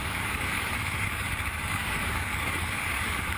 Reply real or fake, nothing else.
fake